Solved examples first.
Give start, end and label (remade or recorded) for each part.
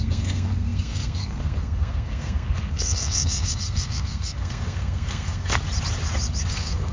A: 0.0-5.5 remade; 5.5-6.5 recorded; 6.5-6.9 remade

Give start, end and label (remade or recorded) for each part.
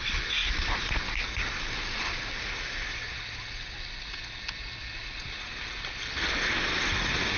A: 0.0-7.4 recorded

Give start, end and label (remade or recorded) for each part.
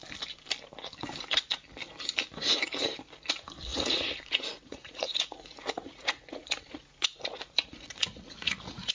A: 0.0-3.7 recorded; 3.7-8.9 remade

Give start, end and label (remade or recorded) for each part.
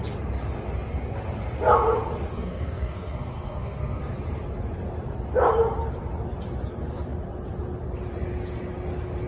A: 0.0-2.3 recorded; 2.3-4.0 remade; 4.0-9.3 recorded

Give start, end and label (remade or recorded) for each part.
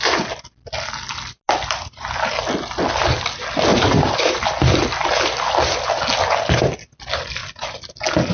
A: 0.0-3.7 recorded; 3.7-4.4 remade; 4.4-8.3 recorded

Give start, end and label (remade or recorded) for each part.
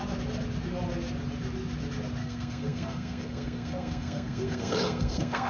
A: 0.0-2.2 recorded; 2.2-5.5 remade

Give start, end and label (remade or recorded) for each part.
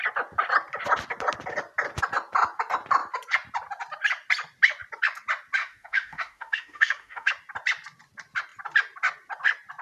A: 0.0-5.6 recorded; 5.6-7.3 remade; 7.3-9.8 recorded